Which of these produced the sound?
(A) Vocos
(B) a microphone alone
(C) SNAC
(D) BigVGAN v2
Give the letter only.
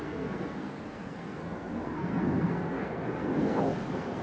C